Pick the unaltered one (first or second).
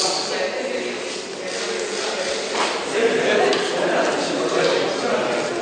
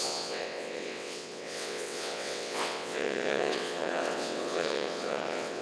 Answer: first